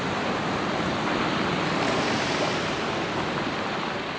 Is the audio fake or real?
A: fake